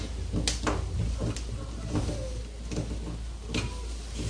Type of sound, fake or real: real